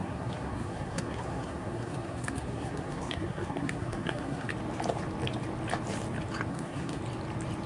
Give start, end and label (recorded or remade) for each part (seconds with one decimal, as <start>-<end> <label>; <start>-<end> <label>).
0.0-4.5 remade; 4.5-6.5 recorded; 6.5-7.0 remade; 7.0-7.7 recorded